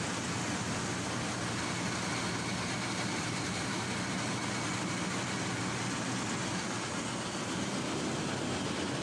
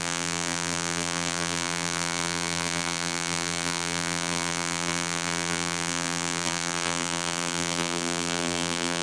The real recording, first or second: first